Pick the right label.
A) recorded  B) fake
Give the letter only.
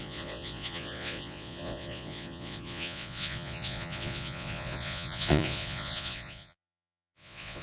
B